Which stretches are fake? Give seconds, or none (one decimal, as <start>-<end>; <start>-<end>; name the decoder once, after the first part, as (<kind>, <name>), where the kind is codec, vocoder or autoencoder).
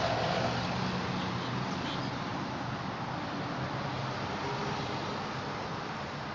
none